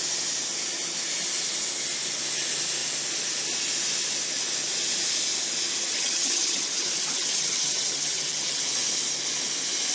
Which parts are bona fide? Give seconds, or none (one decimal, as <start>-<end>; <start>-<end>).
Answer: 0.0-5.9; 8.6-9.9